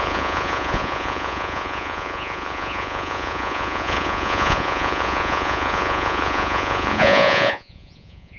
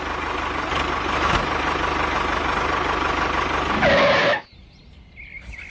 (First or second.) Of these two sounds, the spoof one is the first